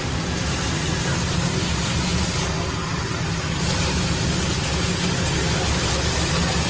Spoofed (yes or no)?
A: no